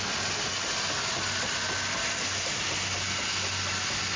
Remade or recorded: recorded